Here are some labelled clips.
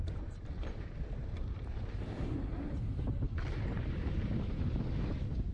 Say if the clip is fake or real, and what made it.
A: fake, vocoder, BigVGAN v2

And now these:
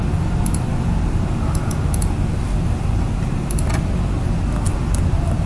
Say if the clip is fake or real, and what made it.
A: real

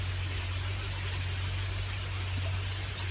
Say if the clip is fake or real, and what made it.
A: real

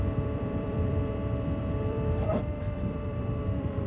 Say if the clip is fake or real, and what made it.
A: fake, vocoder, BigVGAN v2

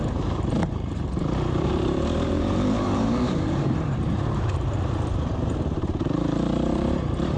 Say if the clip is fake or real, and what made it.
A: fake, vocoder, BigVGAN v2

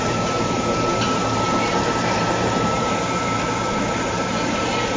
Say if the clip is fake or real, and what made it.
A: fake, vocoder, BigVGAN v2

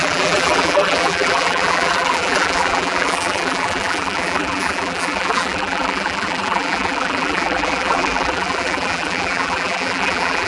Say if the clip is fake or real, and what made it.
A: fake, vocoder, BigVGAN v2